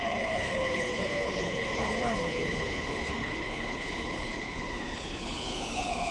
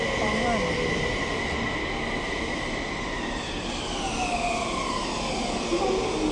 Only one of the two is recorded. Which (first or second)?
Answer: second